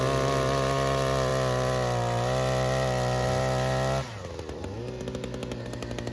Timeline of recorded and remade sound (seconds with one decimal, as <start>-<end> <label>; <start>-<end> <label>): 0.0-6.1 recorded